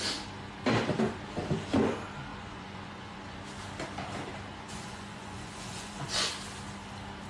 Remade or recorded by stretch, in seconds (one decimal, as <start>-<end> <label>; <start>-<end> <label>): 0.0-2.3 recorded; 2.3-3.4 remade; 3.4-4.5 recorded; 4.5-6.3 remade; 6.3-7.3 recorded